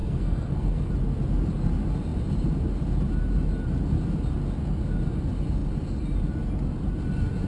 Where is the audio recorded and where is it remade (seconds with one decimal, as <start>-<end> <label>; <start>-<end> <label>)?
0.0-0.9 remade; 0.9-7.5 recorded